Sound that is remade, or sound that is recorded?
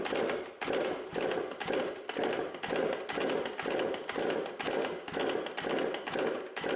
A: recorded